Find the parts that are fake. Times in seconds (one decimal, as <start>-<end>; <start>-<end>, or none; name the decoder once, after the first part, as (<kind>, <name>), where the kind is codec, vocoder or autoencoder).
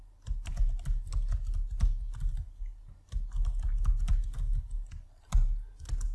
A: none